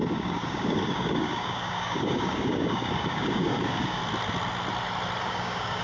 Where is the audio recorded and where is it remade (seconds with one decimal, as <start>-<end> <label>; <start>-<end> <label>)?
0.0-4.0 remade; 4.0-5.2 recorded; 5.2-5.8 remade